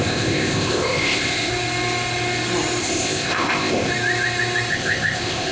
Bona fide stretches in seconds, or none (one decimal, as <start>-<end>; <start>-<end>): 1.5-2.8; 3.9-4.7